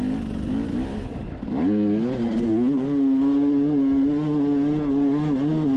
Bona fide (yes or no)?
yes